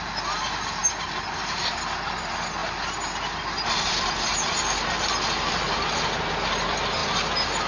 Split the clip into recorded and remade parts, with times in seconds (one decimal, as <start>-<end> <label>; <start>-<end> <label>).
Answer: 0.0-7.7 recorded

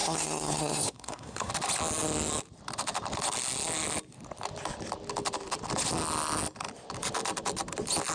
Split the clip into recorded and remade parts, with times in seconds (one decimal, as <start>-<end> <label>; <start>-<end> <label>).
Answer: 0.0-1.5 remade; 1.5-8.1 recorded

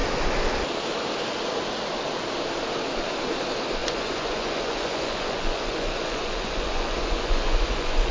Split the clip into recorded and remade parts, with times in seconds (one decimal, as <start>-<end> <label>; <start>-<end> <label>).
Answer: 0.0-3.8 recorded; 3.8-8.1 remade

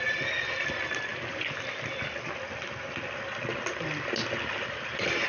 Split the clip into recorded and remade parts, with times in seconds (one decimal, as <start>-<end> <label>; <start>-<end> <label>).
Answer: 0.0-5.3 recorded